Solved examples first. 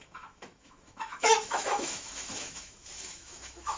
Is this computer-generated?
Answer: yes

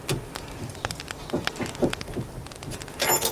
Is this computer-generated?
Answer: no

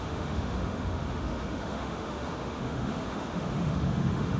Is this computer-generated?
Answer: yes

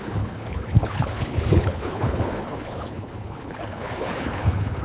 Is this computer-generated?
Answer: yes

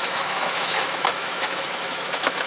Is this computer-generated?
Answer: yes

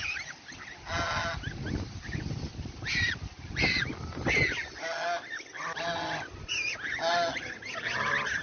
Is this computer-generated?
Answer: no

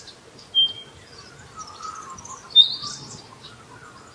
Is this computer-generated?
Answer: no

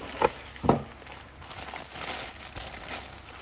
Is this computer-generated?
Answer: no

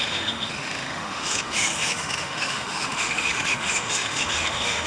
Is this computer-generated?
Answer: yes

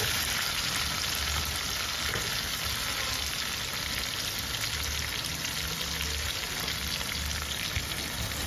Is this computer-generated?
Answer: no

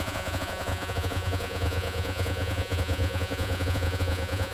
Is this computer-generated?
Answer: yes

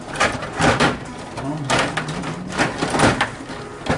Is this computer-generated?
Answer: no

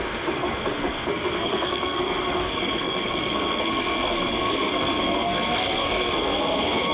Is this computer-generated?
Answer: yes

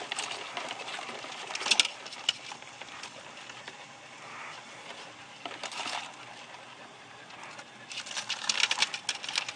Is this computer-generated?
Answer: no